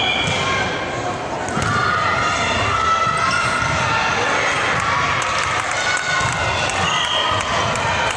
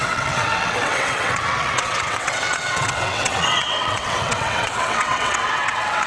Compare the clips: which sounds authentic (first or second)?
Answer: first